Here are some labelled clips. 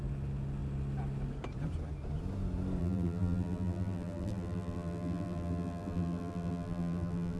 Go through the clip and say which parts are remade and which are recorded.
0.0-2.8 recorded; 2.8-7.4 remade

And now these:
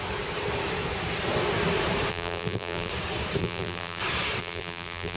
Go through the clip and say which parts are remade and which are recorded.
0.0-2.1 recorded; 2.1-2.9 remade; 2.9-3.4 recorded; 3.4-4.0 remade; 4.0-4.4 recorded; 4.4-5.2 remade

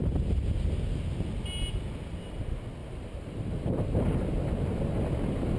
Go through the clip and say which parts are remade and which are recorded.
0.0-2.8 recorded; 2.8-4.3 remade; 4.3-5.6 recorded

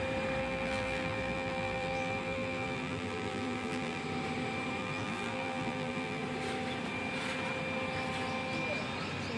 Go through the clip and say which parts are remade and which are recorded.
0.0-0.4 recorded; 0.4-4.0 remade; 4.0-4.8 recorded; 4.8-6.2 remade; 6.2-9.4 recorded